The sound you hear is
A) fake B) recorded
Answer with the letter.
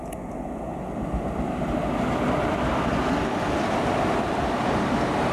B